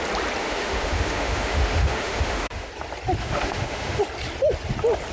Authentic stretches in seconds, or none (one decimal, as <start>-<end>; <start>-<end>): 0.0-0.4; 2.7-3.2; 4.0-5.1